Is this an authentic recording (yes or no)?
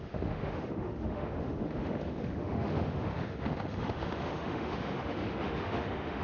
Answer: no